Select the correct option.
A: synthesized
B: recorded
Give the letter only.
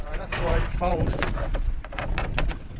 A